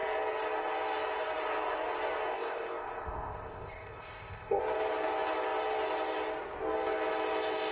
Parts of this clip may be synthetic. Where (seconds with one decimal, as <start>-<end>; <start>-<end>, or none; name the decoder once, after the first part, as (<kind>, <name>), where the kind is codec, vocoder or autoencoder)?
2.3-4.6 (codec, ZipCodec)